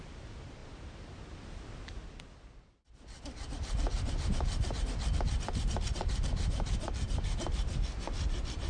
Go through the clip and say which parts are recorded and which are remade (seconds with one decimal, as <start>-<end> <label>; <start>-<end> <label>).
0.0-8.7 recorded